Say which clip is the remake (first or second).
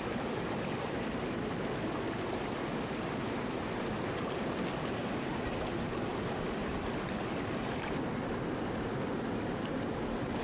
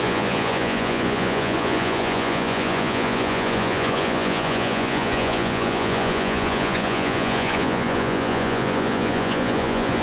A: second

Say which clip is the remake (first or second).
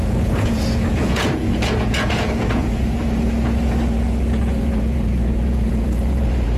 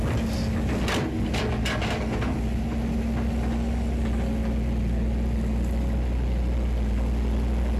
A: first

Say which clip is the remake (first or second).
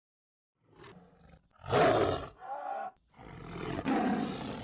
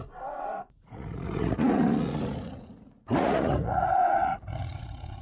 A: second